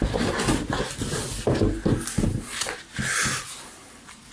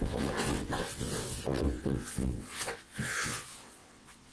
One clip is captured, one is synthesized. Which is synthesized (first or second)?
second